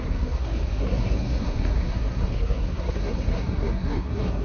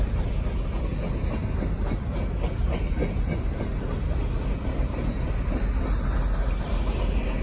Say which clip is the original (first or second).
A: second